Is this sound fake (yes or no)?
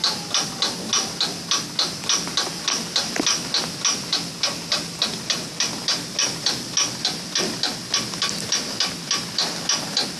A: no